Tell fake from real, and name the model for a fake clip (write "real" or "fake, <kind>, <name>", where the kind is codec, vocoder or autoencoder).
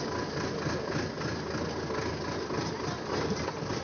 real